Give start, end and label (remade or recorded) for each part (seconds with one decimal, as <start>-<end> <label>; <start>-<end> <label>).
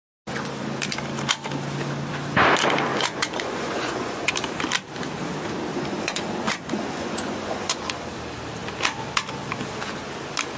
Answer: 0.0-2.9 recorded; 2.9-4.3 remade; 4.3-5.7 recorded; 5.7-7.8 remade; 7.8-10.6 recorded